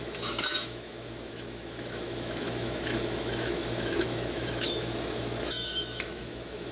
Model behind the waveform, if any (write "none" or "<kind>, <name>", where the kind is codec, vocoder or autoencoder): autoencoder, DAC-VAE